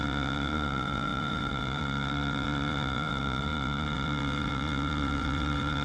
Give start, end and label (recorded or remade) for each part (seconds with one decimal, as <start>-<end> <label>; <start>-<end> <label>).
0.0-5.8 remade